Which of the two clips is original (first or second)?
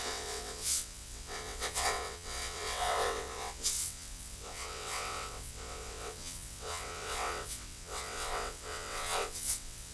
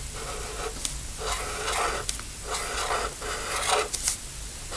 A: second